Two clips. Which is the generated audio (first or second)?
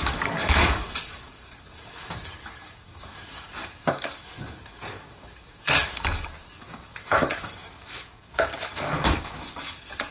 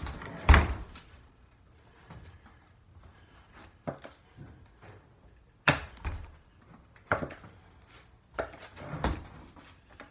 first